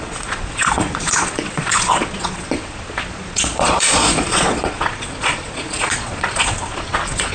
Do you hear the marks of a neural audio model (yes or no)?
yes